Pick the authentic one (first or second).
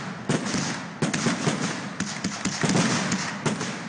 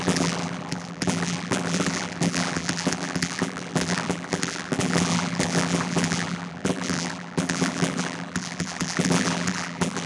first